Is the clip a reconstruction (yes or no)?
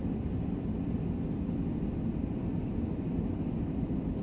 no